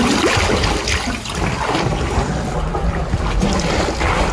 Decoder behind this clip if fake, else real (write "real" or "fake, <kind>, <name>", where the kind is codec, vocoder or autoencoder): real